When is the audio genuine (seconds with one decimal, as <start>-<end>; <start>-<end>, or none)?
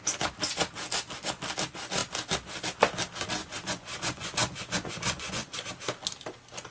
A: 0.0-3.4; 5.7-6.7